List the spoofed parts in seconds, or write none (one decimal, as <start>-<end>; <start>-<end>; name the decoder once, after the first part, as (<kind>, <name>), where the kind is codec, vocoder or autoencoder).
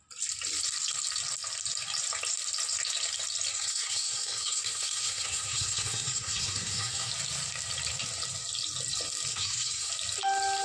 3.5-7.1 (codec, SNAC); 9.3-9.9